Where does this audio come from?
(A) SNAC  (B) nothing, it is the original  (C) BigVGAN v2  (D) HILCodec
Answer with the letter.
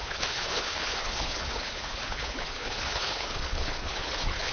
D